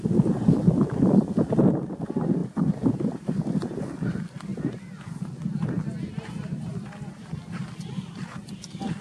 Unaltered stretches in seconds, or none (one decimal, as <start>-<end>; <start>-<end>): 0.0-9.0